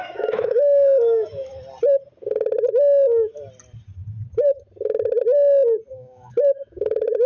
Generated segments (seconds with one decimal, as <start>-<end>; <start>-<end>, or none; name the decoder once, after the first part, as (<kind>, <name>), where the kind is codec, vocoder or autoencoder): 0.0-1.5 (autoencoder, DAC-VAE); 5.9-7.3